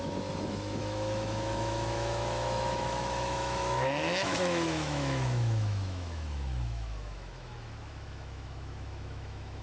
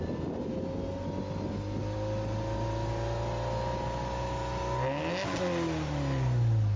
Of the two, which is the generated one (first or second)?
first